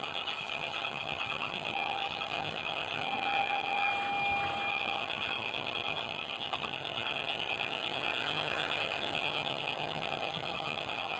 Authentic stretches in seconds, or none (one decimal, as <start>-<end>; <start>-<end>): 3.9-4.7